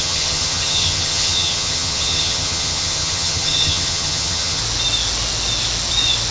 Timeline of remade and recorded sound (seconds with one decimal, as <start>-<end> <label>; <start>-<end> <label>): 0.0-4.6 remade; 4.6-6.3 recorded